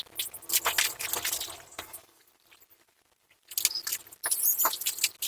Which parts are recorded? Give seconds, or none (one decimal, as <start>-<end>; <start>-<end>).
0.0-1.7; 2.3-5.3